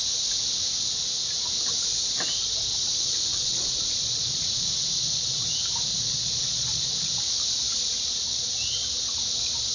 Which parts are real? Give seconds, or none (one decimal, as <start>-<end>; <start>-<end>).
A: 0.0-2.7; 5.5-5.9; 7.1-9.7